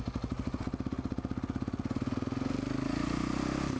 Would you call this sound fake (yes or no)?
no